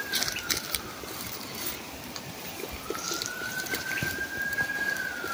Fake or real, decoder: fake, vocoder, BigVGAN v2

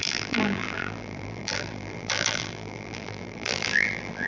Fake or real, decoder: fake, vocoder, BigVGAN v2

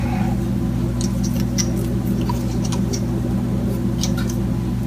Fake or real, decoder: real